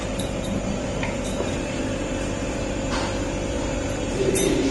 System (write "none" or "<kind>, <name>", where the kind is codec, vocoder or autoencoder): vocoder, BigVGAN v2